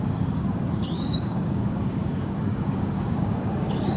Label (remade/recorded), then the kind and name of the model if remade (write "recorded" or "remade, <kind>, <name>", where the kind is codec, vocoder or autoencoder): remade, codec, DAC